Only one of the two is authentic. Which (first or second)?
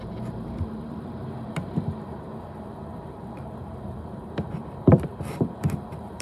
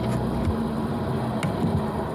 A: second